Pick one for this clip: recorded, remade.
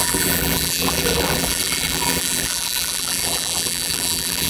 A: remade